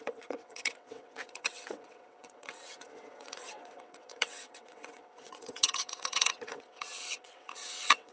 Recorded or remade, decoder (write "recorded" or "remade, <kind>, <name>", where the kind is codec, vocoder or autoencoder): remade, vocoder, WaveNeXt